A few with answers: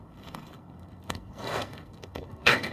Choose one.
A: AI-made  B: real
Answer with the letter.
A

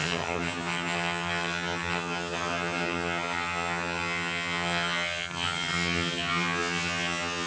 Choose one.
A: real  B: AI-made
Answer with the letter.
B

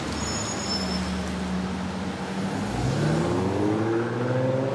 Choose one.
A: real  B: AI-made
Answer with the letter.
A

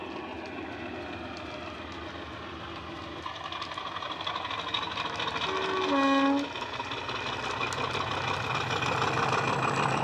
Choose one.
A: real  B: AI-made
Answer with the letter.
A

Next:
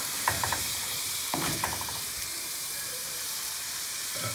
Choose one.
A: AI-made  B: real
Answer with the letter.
A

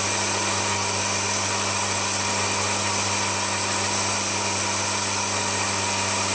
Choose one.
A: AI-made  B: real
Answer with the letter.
B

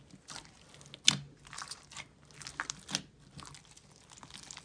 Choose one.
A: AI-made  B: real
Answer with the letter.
B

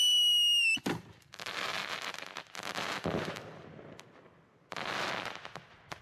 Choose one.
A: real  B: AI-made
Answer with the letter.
A